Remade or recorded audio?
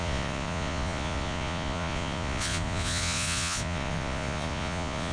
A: remade